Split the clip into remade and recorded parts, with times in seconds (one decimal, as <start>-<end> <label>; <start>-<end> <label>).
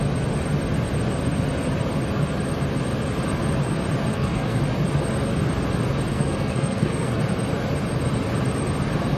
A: 0.0-4.1 recorded; 4.1-4.6 remade; 4.6-6.1 recorded; 6.1-7.2 remade; 7.2-9.2 recorded